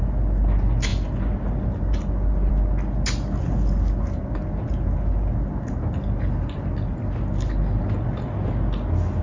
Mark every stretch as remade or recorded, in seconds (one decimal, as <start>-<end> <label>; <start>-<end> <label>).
0.0-9.2 recorded